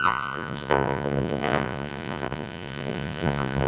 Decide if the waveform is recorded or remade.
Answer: remade